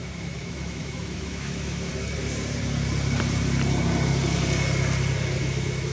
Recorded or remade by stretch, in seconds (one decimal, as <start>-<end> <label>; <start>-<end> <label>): 0.0-1.9 remade; 1.9-5.4 recorded; 5.4-5.9 remade